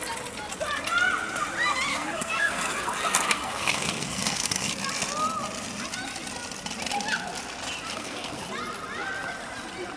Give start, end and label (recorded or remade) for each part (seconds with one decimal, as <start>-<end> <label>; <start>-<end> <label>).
0.0-1.9 recorded; 1.9-4.7 remade; 4.7-7.9 recorded; 7.9-8.4 remade; 8.4-10.0 recorded